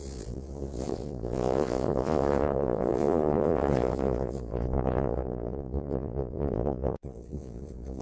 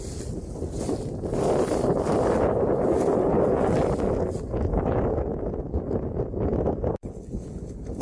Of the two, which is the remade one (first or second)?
first